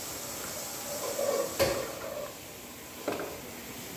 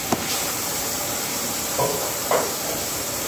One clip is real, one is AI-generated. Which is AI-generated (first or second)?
second